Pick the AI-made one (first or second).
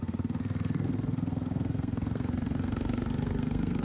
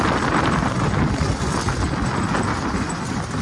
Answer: first